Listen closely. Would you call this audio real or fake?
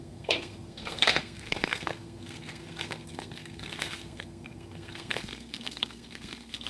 fake